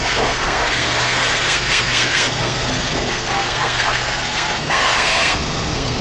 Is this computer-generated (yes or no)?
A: yes